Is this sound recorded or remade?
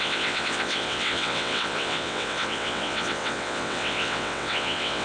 remade